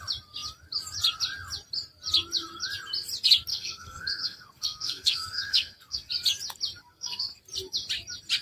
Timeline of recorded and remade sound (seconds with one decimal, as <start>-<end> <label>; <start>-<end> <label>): 0.0-3.5 recorded; 3.5-6.1 remade; 6.1-6.8 recorded; 6.8-7.4 remade; 7.4-8.4 recorded